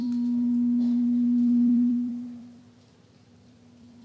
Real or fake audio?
fake